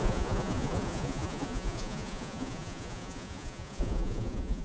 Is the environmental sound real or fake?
fake